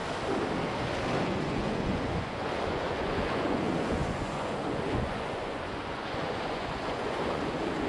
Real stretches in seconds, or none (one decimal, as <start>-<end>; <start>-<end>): 0.0-1.2